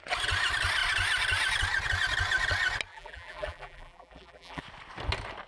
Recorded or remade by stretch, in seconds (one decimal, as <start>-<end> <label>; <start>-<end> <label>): 0.0-2.9 recorded; 2.9-4.6 remade; 4.6-5.5 recorded